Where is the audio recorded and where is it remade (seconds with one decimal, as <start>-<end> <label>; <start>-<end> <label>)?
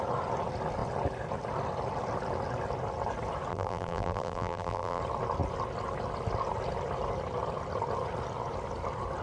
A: 0.0-3.5 recorded; 3.5-5.0 remade; 5.0-9.2 recorded